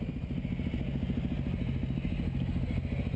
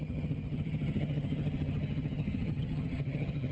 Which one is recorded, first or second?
first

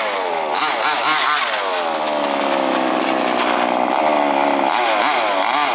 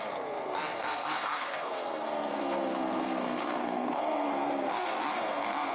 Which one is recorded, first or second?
first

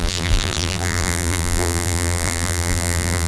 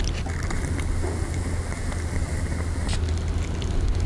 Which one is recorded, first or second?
second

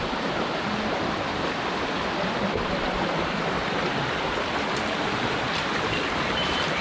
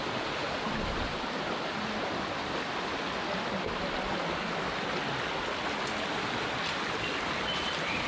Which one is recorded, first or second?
second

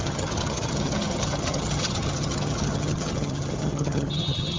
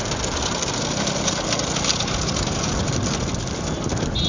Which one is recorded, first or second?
second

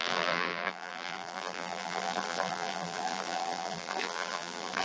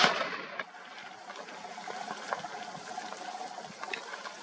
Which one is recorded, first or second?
second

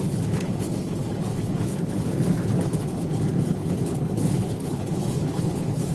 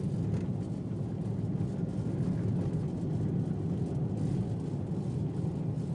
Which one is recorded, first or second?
second